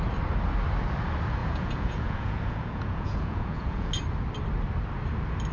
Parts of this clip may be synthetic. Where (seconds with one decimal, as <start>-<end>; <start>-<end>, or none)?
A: 1.4-3.9